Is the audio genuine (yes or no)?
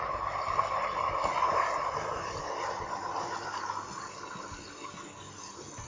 yes